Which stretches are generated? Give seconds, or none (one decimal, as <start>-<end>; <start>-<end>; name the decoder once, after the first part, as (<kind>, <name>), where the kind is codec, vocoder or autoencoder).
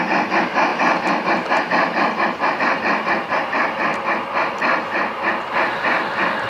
none